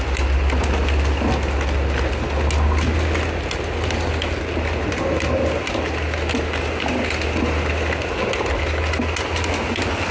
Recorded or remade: recorded